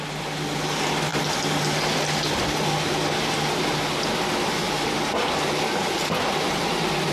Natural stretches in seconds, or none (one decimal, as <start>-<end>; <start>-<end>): 0.0-7.1